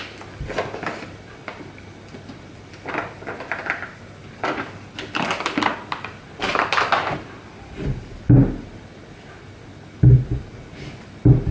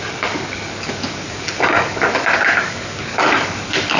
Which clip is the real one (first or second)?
first